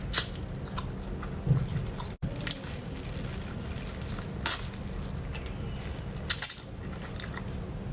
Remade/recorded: recorded